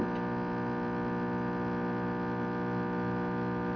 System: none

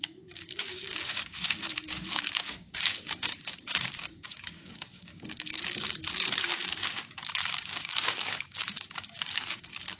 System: codec, DAC